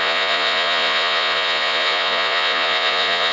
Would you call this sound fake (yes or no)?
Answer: yes